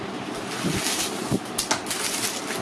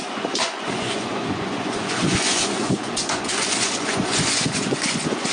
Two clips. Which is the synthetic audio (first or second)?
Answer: second